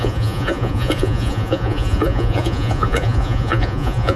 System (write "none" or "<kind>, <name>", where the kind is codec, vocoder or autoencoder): vocoder, Vocos